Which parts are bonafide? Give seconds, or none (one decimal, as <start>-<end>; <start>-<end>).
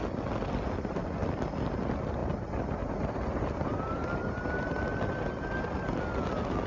0.0-6.7